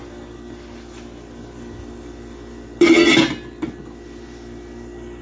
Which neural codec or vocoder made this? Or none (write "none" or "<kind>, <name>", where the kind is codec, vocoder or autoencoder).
none